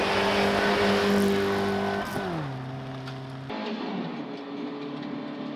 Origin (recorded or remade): recorded